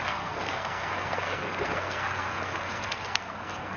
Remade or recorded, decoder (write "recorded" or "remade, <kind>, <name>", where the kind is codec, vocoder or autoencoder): remade, codec, SNAC